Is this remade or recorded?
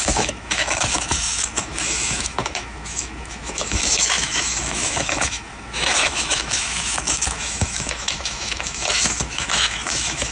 remade